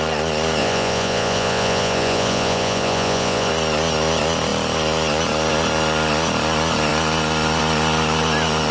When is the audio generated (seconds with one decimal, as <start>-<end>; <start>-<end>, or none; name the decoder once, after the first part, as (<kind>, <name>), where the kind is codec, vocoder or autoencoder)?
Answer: 0.6-3.5 (vocoder, Vocos)